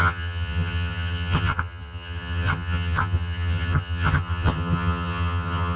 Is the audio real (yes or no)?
no